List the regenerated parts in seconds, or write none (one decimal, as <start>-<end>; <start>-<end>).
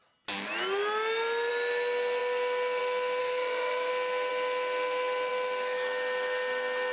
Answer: 3.2-3.9